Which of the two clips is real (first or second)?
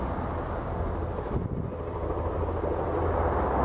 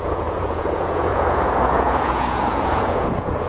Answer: first